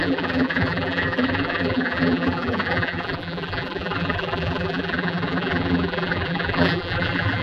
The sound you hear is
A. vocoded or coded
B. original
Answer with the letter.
A